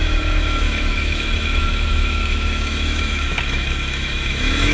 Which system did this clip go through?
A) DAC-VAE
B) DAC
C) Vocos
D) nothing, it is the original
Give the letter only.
A